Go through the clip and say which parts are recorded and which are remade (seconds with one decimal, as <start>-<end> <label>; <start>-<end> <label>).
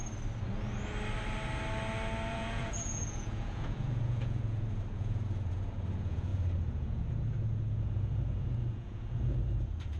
0.0-2.3 recorded; 2.3-10.0 remade